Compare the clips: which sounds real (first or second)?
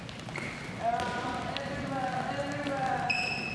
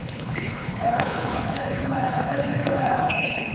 first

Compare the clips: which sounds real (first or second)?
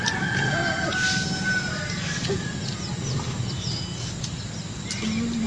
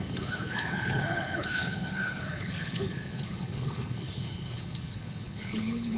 first